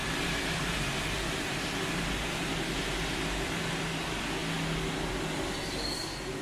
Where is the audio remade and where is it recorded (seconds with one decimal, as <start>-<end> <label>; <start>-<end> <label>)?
0.0-3.8 remade; 3.8-6.4 recorded